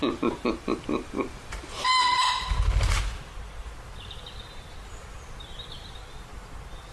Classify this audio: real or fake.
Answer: real